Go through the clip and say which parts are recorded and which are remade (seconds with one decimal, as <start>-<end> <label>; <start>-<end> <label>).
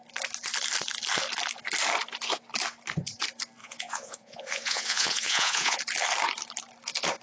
0.0-3.6 recorded; 3.6-5.8 remade; 5.8-7.2 recorded